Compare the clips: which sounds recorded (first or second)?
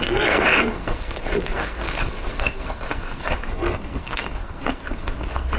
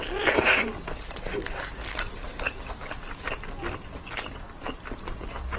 second